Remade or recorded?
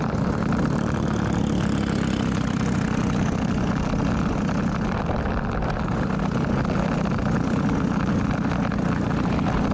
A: recorded